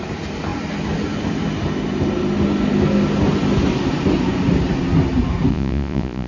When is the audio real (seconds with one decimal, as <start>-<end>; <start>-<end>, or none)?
0.0-5.5